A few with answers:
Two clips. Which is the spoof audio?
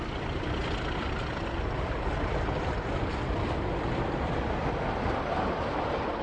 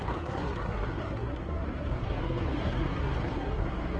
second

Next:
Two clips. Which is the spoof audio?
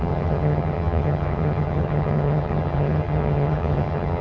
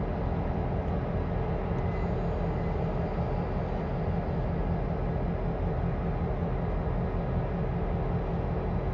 first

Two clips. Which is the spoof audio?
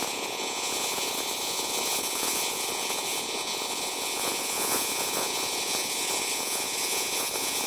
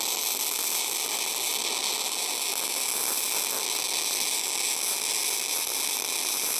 first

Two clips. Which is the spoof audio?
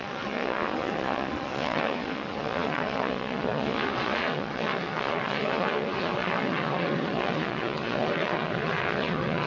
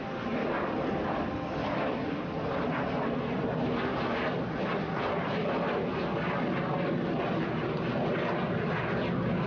first